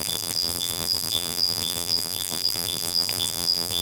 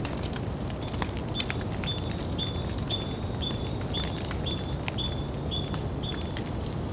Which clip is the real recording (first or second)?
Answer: second